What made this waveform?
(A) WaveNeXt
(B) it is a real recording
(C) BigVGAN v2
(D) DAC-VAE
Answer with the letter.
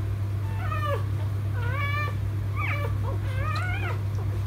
B